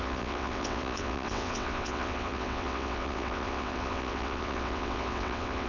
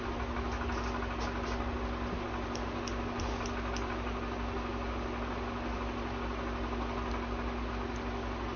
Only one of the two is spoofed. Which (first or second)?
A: first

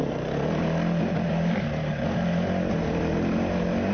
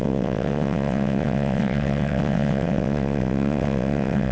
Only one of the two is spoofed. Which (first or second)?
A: second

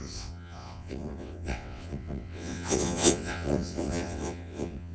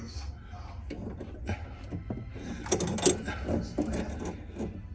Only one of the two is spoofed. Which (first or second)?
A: first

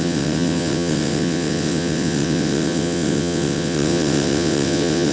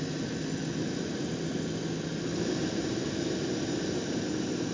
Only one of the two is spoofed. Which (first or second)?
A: first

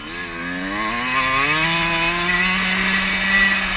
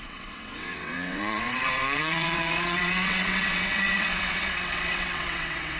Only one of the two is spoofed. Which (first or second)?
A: second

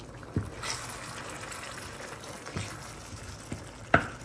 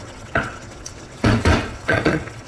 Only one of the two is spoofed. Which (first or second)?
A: second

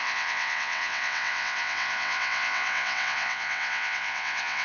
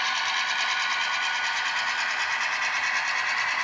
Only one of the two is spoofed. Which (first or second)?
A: first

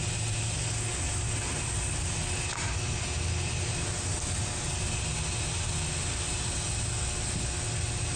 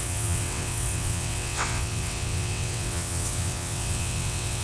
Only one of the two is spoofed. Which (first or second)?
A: second